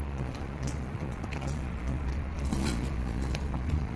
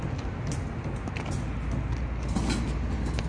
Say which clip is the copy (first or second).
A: first